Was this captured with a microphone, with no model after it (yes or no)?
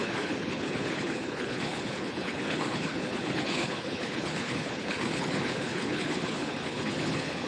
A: no